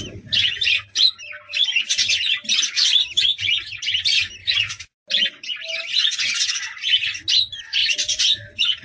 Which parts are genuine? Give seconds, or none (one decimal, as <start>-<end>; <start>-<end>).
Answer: 0.0-8.8